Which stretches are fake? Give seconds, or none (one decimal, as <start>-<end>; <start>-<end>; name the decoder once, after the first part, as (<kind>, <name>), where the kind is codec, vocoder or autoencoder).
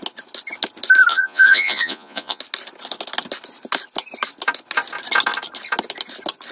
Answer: 1.1-2.4 (vocoder, Vocos)